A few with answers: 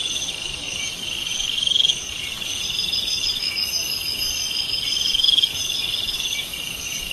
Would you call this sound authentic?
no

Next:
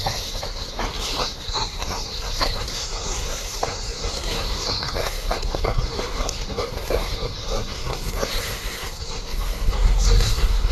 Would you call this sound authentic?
no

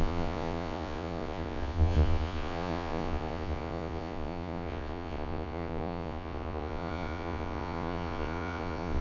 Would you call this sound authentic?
no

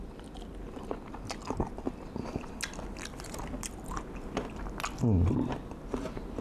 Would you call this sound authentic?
yes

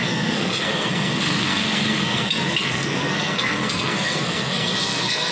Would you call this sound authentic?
no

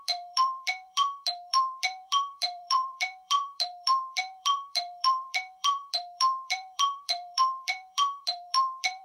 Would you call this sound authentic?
no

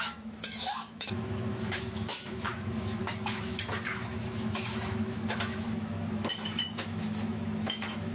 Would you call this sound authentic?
no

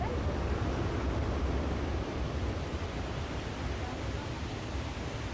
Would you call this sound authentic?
yes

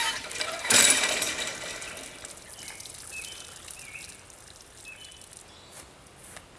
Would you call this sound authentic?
yes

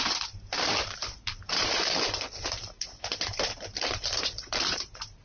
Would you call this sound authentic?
no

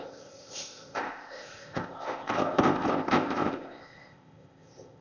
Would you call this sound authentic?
no